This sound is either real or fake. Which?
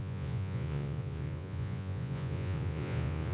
fake